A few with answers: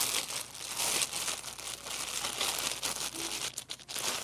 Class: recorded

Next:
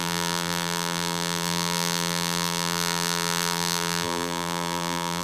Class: remade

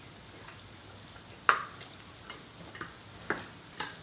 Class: recorded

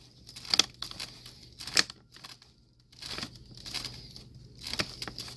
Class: recorded